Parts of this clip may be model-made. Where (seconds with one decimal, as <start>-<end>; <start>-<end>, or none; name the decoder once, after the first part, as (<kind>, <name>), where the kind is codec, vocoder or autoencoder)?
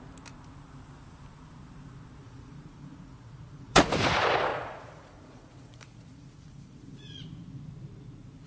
2.2-3.9 (vocoder, Vocos); 4.5-7.2